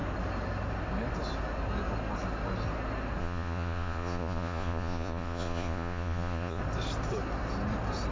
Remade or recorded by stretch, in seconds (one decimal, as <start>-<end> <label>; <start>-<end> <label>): 0.0-3.2 recorded; 3.2-6.6 remade; 6.6-8.1 recorded